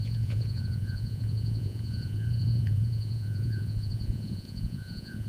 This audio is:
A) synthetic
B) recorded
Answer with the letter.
A